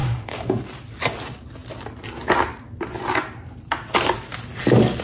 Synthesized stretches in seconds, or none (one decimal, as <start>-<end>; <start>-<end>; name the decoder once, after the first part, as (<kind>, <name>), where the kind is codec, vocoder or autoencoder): 0.0-0.6 (codec, DAC)